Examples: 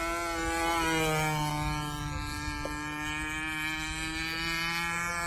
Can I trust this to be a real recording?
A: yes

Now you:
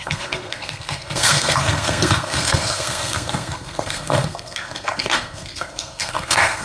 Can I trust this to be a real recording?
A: no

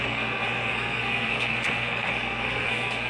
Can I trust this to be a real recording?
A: no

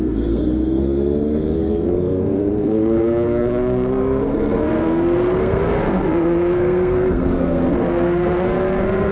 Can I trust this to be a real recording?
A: no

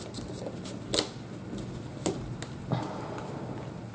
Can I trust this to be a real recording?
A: yes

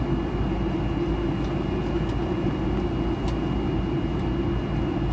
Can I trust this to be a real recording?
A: yes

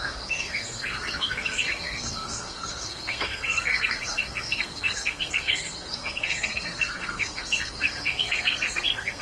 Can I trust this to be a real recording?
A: no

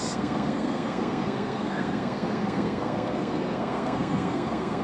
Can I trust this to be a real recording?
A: no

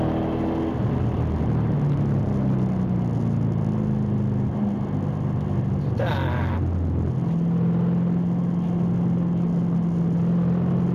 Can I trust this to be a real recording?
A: yes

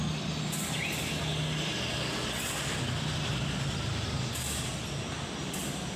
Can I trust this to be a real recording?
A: yes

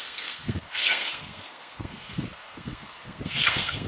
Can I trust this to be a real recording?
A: no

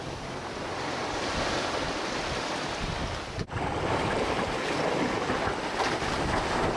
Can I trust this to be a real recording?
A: yes